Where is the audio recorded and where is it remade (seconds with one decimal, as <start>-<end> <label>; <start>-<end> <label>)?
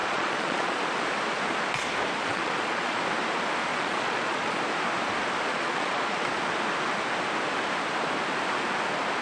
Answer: 0.0-0.8 remade; 0.8-2.2 recorded; 2.2-3.0 remade; 3.0-3.7 recorded; 3.7-4.6 remade; 4.6-5.5 recorded; 5.5-6.2 remade; 6.2-9.2 recorded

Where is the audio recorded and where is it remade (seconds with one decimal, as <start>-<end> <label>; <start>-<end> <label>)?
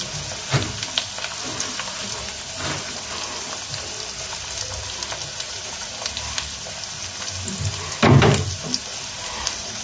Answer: 0.0-5.2 recorded; 5.2-5.9 remade; 5.9-9.8 recorded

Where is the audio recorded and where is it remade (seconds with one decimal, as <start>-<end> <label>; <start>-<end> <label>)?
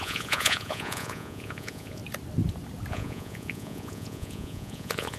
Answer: 0.0-2.0 remade; 2.0-2.9 recorded; 2.9-5.2 remade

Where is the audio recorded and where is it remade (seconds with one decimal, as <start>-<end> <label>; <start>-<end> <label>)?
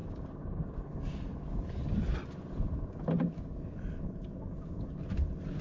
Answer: 0.0-5.6 recorded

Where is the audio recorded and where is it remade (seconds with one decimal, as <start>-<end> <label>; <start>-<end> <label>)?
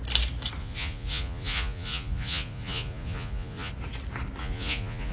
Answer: 0.0-0.6 recorded; 0.6-3.7 remade; 3.7-4.4 recorded; 4.4-5.1 remade